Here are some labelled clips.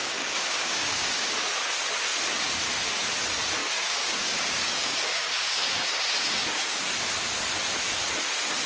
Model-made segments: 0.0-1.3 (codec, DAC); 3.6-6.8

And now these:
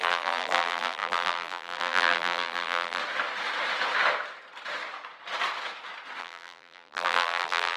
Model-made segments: 0.0-3.0 (vocoder, BigVGAN v2); 6.2-7.8

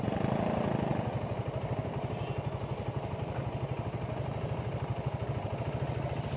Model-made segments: none

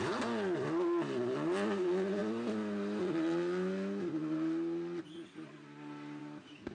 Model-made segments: none

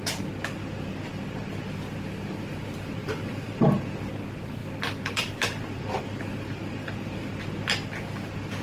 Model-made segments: 3.0-3.7 (vocoder, BigVGAN v2)

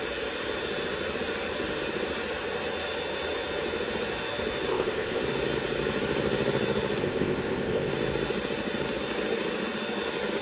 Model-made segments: 4.7-5.2 (codec, ZipCodec); 7.0-7.9

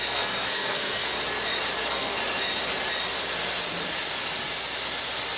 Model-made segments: 0.0-1.1 (codec, SNAC); 1.8-2.2